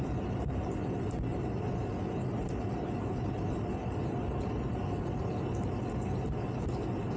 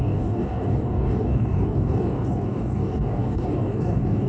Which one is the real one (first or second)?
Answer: first